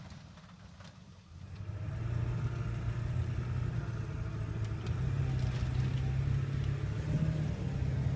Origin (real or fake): real